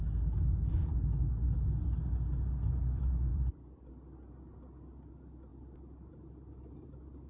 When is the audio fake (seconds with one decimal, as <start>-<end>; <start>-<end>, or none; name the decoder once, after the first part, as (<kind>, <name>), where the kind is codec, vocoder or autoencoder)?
3.3-3.9 (vocoder, BigVGAN v2)